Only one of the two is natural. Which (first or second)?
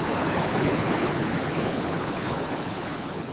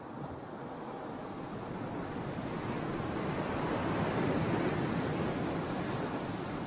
second